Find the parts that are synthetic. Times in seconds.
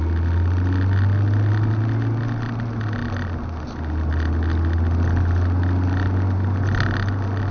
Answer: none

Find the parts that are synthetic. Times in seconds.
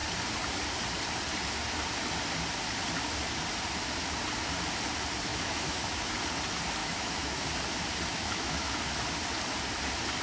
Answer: 5.3-6.1 (autoencoder, DAC-VAE); 6.8-7.4; 8.1-8.8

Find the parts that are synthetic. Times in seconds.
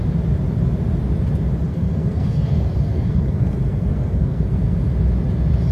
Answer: 1.7-4.8 (codec, SNAC)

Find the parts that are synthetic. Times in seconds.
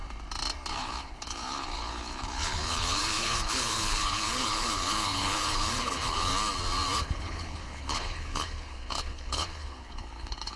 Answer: 0.7-6.3 (codec, HILCodec); 7.0-10.6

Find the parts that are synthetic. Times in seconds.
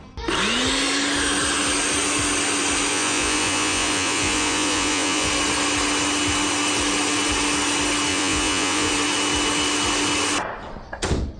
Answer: 2.9-5.3 (vocoder, Vocos); 8.1-8.9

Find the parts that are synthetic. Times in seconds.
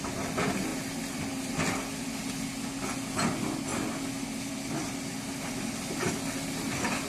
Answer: none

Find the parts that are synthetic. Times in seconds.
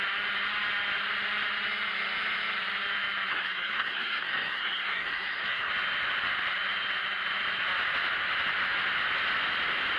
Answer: 3.3-5.7 (codec, SNAC)